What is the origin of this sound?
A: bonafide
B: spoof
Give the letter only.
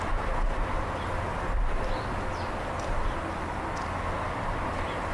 A